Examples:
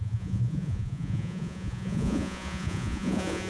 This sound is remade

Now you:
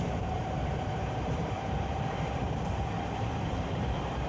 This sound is remade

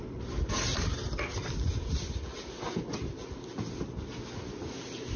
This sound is recorded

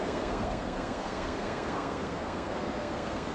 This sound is remade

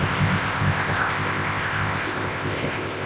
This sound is remade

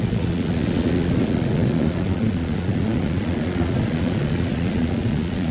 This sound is remade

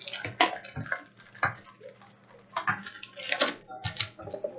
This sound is recorded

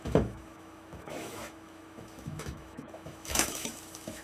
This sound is remade